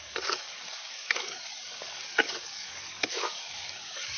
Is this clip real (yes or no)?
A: no